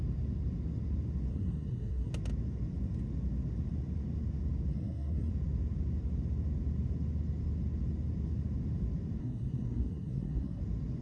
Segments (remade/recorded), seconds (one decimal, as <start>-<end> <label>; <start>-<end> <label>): 0.0-1.3 recorded; 1.3-2.1 remade; 2.1-4.7 recorded; 4.7-5.3 remade; 5.3-9.2 recorded; 9.2-10.6 remade; 10.6-11.0 recorded